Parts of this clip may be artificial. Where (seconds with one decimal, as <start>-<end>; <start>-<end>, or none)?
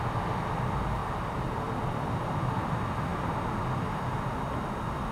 1.0-2.1